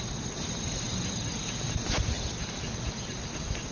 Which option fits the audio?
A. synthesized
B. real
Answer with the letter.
B